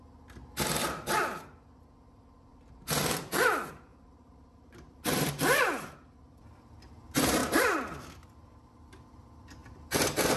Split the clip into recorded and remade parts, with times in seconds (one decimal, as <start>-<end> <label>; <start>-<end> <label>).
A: 0.0-2.5 recorded; 2.5-3.0 remade; 3.0-3.9 recorded; 3.9-5.3 remade; 5.3-10.4 recorded